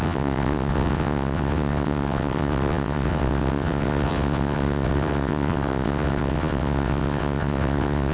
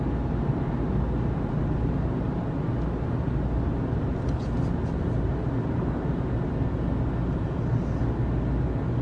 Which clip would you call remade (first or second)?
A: first